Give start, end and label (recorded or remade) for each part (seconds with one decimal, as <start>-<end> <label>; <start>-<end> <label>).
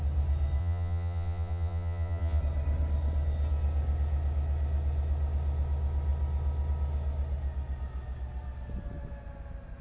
0.0-0.6 recorded; 0.6-2.4 remade; 2.4-9.8 recorded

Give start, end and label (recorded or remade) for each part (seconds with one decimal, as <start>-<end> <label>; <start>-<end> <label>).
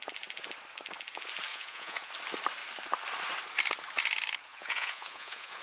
0.0-1.5 recorded; 1.5-2.1 remade; 2.1-4.5 recorded; 4.5-5.6 remade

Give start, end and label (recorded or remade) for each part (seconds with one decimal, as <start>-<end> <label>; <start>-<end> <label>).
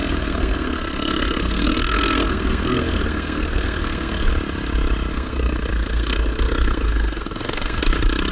0.0-4.3 remade; 4.3-5.1 recorded; 5.1-7.8 remade; 7.8-8.3 recorded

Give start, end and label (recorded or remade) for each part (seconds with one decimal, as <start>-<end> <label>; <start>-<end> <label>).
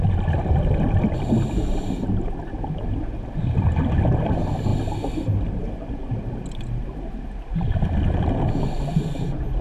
0.0-9.6 recorded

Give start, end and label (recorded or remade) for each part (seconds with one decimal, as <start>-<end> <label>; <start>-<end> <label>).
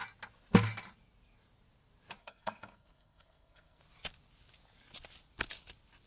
0.0-2.2 recorded; 2.2-3.8 remade; 3.8-6.1 recorded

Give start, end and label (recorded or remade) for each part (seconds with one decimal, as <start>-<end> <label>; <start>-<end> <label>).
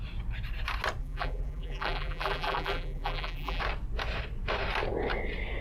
0.0-1.0 recorded; 1.0-3.6 remade; 3.6-5.6 recorded